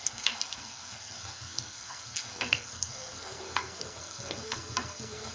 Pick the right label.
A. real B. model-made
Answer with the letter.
B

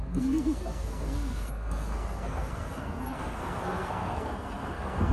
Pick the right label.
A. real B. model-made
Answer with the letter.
B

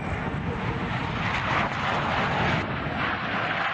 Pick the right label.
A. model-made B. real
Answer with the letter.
B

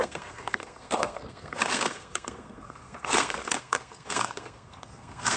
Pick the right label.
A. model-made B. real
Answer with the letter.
A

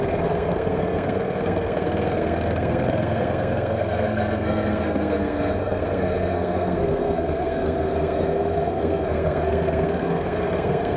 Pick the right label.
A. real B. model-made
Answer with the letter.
B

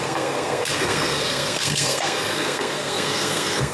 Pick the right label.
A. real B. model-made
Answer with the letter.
B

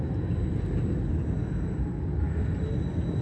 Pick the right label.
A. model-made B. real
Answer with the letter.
B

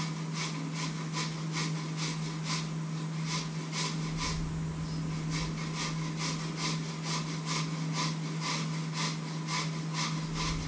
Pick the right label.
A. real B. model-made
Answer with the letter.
A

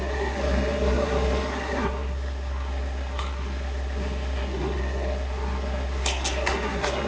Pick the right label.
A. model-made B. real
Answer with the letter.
A